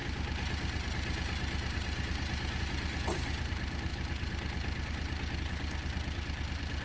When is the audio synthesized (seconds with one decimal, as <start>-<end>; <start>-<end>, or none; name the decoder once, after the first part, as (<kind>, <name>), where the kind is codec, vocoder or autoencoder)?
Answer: none